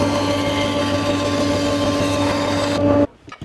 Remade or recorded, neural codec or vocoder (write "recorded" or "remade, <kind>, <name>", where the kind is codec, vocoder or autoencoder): recorded